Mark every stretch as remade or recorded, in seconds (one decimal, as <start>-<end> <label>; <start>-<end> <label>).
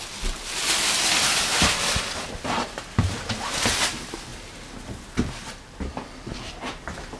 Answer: 0.0-1.5 remade; 1.5-3.9 recorded; 3.9-4.3 remade; 4.3-5.3 recorded; 5.3-7.2 remade